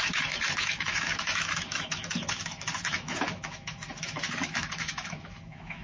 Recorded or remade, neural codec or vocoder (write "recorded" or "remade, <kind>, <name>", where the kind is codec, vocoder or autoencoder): remade, autoencoder, DAC-VAE